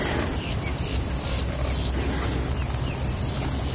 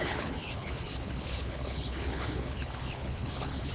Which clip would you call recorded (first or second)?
first